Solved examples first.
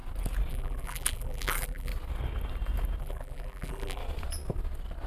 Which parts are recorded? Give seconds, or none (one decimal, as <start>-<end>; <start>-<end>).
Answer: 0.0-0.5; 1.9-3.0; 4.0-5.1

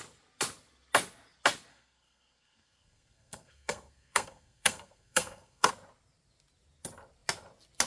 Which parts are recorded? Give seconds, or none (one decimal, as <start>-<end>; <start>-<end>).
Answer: 0.0-1.7; 5.7-7.9

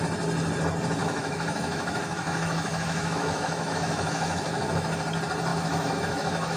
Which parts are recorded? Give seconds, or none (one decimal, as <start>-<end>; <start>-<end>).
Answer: 0.0-1.0; 5.0-5.5

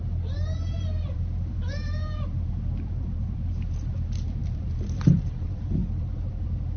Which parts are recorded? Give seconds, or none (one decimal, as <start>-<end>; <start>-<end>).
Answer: none